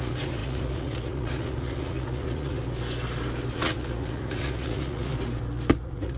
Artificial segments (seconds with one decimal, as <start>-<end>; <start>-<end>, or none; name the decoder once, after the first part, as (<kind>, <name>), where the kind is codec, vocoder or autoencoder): 0.0-2.6 (vocoder, Vocos); 3.5-5.1; 5.7-6.2